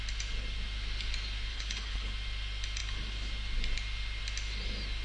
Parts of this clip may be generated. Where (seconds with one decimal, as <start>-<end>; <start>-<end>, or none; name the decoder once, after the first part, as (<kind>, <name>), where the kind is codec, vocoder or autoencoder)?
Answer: 1.5-2.1 (codec, HILCodec)